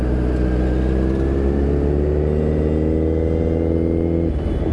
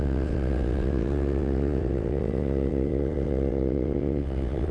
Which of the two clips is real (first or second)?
first